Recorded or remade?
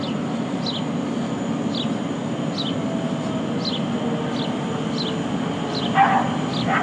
recorded